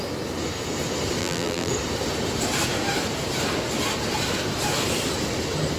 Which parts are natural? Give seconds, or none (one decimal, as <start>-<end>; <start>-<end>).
0.0-1.2; 1.7-5.8